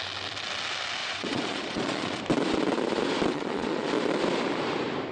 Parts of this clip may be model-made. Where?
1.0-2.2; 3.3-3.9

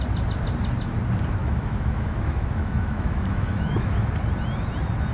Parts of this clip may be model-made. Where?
1.4-4.1

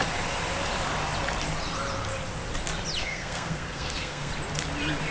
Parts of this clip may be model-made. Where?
3.0-4.3